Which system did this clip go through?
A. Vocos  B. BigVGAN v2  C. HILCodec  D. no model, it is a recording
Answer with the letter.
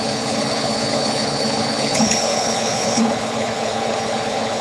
C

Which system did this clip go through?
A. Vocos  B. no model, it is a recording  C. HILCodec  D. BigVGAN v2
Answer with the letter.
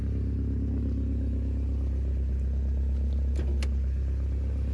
B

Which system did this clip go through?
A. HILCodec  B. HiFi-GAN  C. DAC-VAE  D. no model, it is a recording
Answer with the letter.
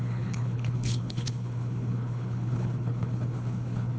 A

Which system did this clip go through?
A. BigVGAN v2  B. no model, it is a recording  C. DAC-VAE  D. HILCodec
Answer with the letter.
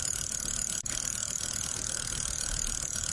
B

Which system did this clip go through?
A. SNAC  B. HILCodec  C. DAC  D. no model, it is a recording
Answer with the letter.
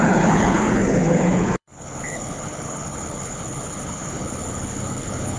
B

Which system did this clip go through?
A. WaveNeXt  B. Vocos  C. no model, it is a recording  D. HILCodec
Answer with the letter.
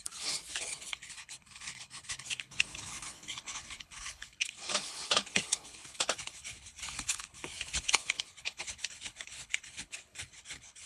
D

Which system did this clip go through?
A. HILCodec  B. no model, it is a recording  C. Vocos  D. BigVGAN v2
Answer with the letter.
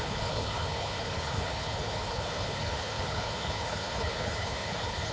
A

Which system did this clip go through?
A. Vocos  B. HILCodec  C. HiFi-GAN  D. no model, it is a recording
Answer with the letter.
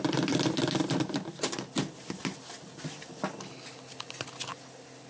D